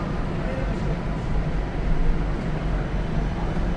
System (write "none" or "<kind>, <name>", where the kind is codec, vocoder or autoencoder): none